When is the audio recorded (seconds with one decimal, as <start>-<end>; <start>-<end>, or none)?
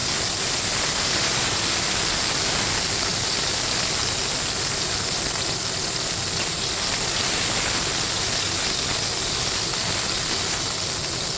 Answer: 0.0-11.4